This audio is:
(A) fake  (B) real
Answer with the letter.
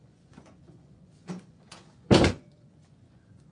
A